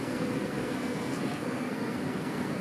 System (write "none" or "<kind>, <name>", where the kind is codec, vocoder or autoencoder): codec, SNAC